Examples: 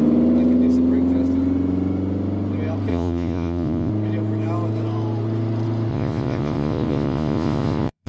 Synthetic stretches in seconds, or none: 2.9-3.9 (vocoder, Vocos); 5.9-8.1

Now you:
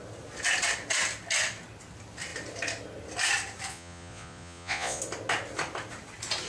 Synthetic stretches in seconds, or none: 3.7-5.0 (vocoder, Vocos)

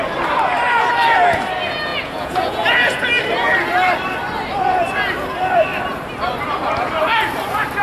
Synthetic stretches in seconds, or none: 1.9-3.0 (vocoder, Vocos)

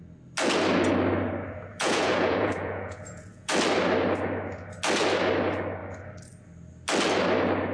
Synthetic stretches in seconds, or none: 1.7-3.5 (vocoder, Vocos)

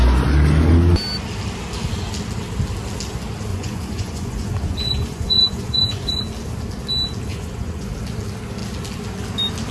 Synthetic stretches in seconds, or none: 3.5-6.2 (vocoder, Vocos); 7.3-7.9